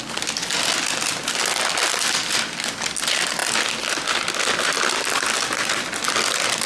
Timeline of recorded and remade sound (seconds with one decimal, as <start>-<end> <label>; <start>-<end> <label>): 0.0-6.7 recorded